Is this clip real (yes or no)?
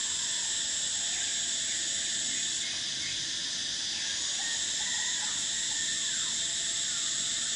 yes